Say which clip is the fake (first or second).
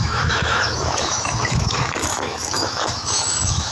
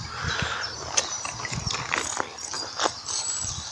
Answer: first